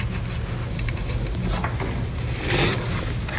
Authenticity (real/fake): real